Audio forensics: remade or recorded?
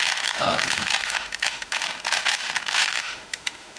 remade